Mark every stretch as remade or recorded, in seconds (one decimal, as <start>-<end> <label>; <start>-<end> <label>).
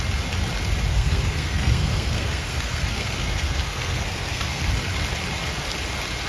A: 0.0-0.9 recorded; 0.9-4.7 remade; 4.7-6.3 recorded